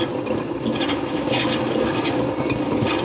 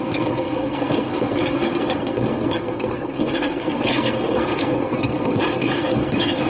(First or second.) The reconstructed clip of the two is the second